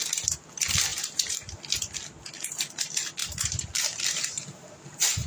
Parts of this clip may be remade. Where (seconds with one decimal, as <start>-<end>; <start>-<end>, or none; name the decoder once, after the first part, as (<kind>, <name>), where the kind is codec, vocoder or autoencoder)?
0.9-1.6 (vocoder, BigVGAN v2); 3.2-5.3